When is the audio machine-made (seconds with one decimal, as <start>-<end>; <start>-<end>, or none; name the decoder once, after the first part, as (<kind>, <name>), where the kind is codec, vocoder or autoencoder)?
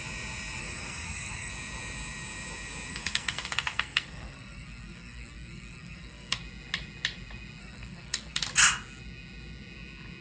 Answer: 0.6-1.5 (codec, SNAC); 2.9-6.4; 7.6-8.5